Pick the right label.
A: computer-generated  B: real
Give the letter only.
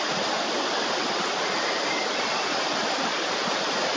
A